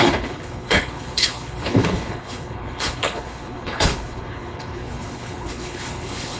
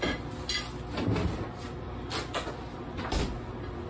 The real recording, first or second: second